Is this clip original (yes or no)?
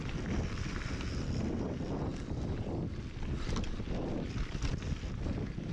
yes